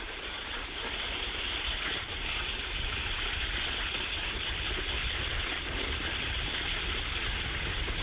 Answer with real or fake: real